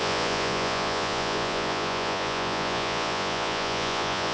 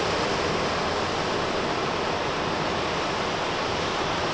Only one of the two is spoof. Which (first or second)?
first